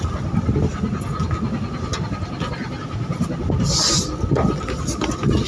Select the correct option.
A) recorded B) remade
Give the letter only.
A